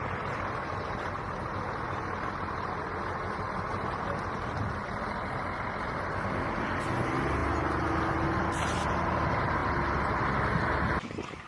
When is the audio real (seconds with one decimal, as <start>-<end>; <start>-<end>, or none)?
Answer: 0.0-11.5